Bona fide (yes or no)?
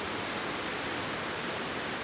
yes